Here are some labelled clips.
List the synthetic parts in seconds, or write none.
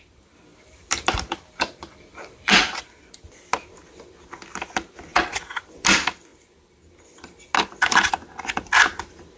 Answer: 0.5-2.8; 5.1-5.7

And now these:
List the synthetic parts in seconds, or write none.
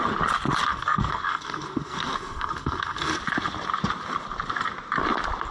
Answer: 0.7-3.2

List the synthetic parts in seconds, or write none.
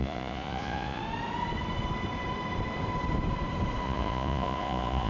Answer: 0.0-1.0; 3.8-5.1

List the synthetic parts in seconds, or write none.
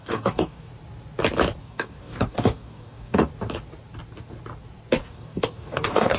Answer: 0.0-0.7; 1.6-3.3; 5.0-6.2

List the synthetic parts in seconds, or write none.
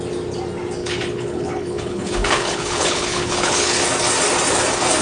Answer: 0.8-3.8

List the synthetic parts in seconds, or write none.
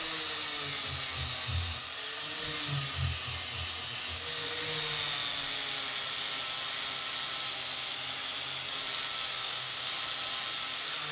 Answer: 9.3-9.9